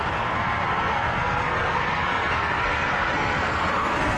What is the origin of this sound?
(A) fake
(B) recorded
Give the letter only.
A